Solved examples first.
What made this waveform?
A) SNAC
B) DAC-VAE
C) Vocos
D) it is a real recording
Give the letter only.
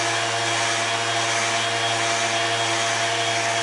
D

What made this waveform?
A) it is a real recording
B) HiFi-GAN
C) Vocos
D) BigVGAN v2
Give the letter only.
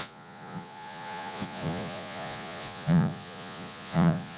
C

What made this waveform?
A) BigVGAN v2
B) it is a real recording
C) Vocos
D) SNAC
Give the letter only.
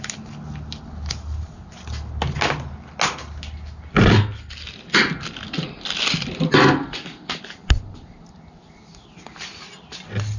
B